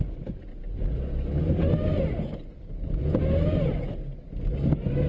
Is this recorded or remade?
recorded